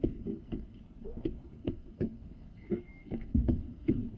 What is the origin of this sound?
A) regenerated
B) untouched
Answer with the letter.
A